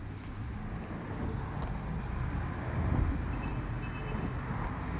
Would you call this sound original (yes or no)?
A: yes